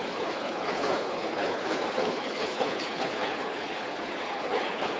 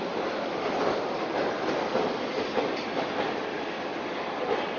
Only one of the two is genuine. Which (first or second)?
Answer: second